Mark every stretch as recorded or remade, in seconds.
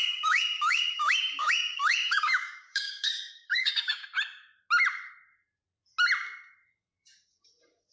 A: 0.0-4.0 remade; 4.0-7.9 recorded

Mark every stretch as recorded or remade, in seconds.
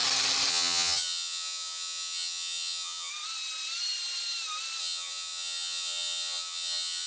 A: 0.0-0.5 recorded; 0.5-3.1 remade; 3.1-4.8 recorded; 4.8-7.1 remade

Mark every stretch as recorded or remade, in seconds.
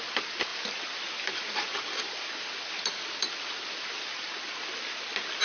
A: 0.0-5.4 recorded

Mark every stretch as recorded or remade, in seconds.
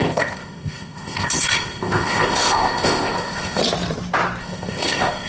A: 0.0-3.6 remade; 3.6-4.4 recorded; 4.4-5.3 remade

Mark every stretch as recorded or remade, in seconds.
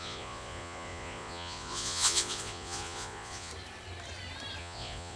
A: 0.0-3.5 remade; 3.5-4.6 recorded; 4.6-5.2 remade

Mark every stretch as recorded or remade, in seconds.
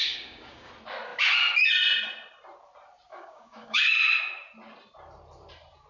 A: 0.0-0.7 remade; 0.7-3.1 recorded; 3.1-3.8 remade; 3.8-5.9 recorded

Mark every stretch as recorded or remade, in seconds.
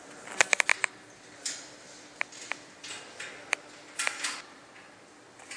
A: 0.0-5.6 recorded